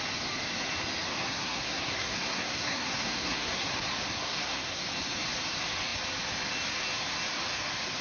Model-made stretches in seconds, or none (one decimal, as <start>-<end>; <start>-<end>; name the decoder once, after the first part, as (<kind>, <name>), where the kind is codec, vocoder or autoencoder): 1.2-3.7 (codec, SNAC); 4.2-4.8